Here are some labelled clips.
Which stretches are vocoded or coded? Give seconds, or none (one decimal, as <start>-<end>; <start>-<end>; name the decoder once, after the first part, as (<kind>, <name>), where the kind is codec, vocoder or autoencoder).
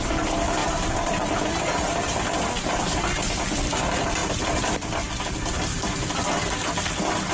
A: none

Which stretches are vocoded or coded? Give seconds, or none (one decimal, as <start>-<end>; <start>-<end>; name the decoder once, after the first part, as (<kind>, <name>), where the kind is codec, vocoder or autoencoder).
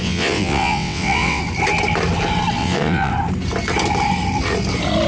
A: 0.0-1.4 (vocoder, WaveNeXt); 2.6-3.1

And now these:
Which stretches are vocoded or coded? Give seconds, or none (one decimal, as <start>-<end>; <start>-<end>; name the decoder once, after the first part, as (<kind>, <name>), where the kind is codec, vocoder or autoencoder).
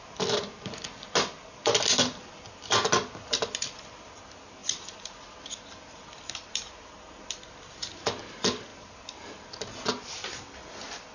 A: none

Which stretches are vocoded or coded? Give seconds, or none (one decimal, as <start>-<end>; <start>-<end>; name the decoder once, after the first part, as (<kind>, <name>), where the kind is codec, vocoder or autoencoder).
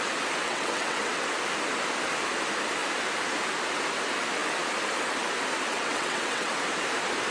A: 0.4-1.1 (vocoder, WaveNeXt); 5.7-6.5